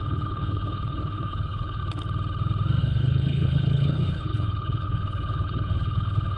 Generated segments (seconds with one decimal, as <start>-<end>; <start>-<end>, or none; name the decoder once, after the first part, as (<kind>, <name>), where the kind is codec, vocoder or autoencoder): 0.0-1.8 (codec, HILCodec); 2.8-6.4